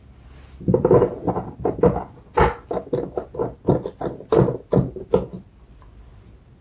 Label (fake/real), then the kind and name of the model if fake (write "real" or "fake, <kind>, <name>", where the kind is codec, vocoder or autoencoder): real